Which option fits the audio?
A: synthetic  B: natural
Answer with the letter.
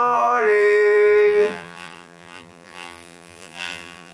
A